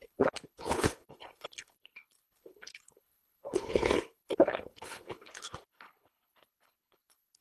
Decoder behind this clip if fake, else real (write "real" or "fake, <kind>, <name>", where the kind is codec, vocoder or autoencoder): fake, codec, HILCodec